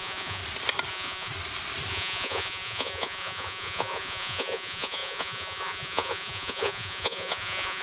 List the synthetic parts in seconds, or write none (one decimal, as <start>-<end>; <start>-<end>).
0.0-0.4; 0.9-1.3; 1.9-7.8